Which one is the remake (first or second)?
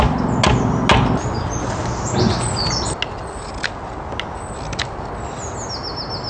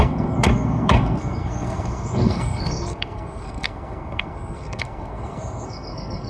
second